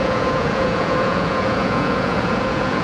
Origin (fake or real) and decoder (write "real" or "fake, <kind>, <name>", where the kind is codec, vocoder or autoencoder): fake, vocoder, Vocos